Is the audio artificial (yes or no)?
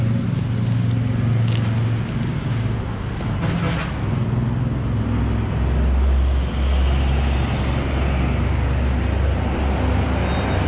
no